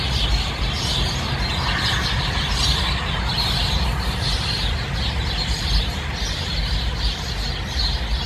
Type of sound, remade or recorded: recorded